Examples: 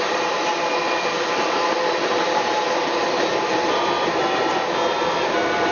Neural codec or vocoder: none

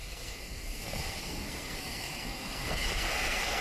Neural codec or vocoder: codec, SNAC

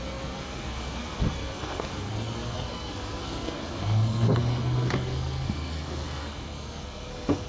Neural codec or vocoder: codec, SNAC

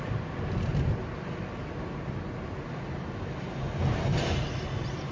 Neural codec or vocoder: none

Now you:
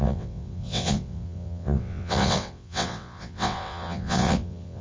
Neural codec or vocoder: vocoder, WaveNeXt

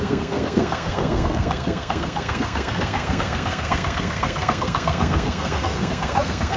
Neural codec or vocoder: codec, SNAC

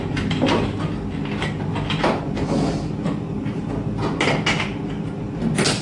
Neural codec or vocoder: none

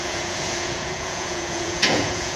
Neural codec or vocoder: vocoder, Vocos